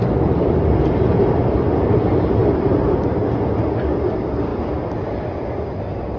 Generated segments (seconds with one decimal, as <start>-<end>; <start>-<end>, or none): 0.0-2.8